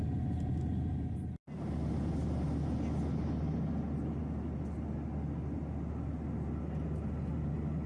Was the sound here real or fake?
real